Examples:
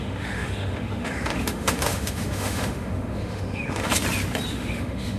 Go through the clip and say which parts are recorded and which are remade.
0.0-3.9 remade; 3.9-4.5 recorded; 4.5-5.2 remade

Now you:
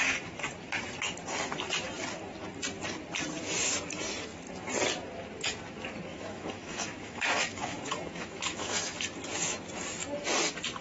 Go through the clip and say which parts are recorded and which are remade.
0.0-6.1 recorded; 6.1-8.9 remade; 8.9-10.8 recorded

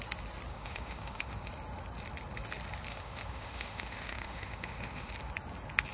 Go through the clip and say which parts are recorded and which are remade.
0.0-0.5 recorded; 0.5-1.5 remade; 1.5-2.9 recorded; 2.9-5.1 remade; 5.1-5.9 recorded